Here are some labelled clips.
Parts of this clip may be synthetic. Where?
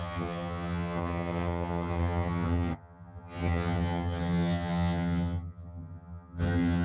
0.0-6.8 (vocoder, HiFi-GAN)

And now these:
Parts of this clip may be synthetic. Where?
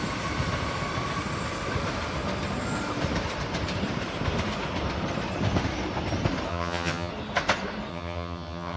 6.5-7.1 (vocoder, HiFi-GAN); 7.9-8.8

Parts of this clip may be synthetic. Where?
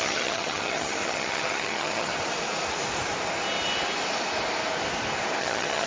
0.0-2.1 (vocoder, HiFi-GAN); 5.4-5.9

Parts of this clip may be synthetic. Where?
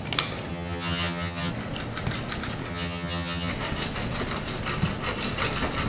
0.5-1.5 (vocoder, HiFi-GAN); 2.7-3.5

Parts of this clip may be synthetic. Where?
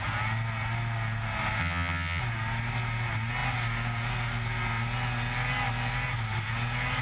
1.6-2.2 (vocoder, HiFi-GAN)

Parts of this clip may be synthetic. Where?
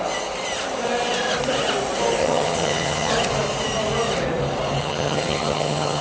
2.2-3.1 (vocoder, HiFi-GAN); 4.8-6.0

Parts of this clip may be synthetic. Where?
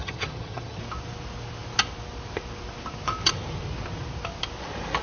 0.0-0.8 (vocoder, HiFi-GAN)